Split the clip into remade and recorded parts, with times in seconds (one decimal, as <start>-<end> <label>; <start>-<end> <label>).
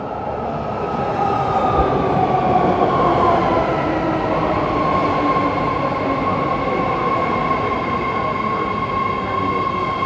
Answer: 0.0-7.4 recorded; 7.4-8.0 remade; 8.0-10.1 recorded